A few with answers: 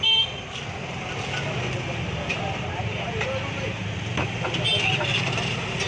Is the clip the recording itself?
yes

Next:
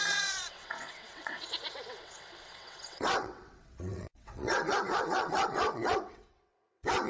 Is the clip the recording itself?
no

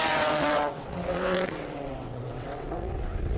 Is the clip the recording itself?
no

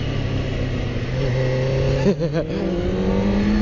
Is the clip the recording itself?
yes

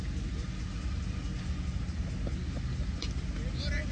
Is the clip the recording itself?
yes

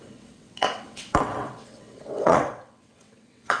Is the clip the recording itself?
no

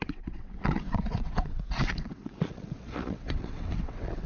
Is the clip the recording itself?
no